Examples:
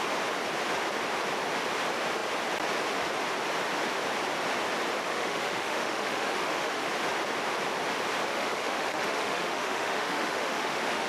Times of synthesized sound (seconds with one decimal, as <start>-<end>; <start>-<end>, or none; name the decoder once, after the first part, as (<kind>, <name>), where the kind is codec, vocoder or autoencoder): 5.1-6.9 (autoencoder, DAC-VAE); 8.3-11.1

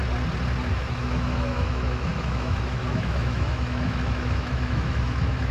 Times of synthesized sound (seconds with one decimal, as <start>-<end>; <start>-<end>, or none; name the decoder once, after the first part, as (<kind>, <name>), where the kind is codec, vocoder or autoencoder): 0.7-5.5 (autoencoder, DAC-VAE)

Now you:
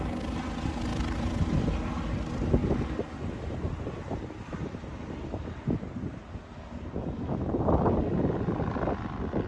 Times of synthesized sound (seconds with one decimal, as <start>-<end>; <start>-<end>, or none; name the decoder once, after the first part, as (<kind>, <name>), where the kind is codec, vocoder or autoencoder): 0.9-1.7 (vocoder, BigVGAN v2)